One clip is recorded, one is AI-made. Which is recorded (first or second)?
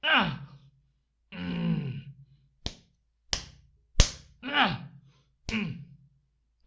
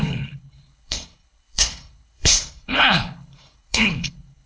first